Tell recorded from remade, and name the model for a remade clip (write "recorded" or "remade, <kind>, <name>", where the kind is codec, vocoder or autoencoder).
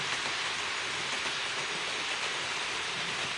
recorded